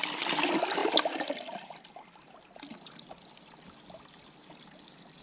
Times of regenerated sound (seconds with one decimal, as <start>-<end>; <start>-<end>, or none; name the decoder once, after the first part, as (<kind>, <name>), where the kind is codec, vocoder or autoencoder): none